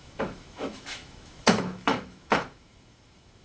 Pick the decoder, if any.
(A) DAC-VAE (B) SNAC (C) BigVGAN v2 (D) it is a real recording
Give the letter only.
A